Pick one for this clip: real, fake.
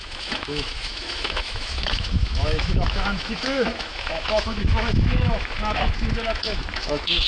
fake